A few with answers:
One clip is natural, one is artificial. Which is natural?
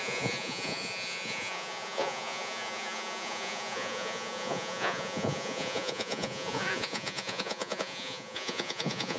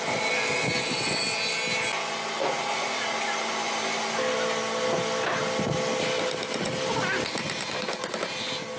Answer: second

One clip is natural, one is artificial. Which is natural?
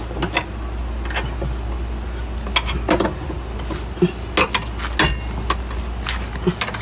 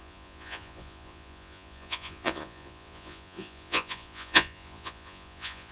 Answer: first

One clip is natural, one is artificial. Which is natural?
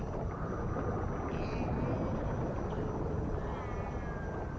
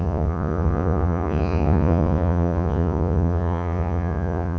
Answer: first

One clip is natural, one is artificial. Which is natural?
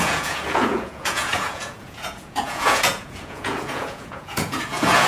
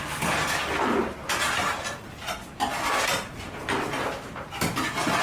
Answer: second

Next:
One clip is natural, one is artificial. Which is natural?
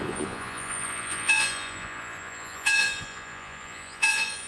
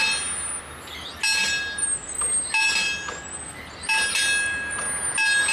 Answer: second